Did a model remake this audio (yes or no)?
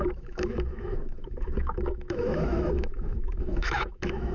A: yes